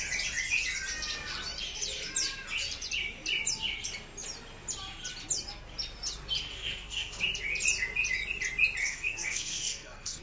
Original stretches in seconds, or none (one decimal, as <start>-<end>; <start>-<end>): 0.0-6.5; 7.2-8.8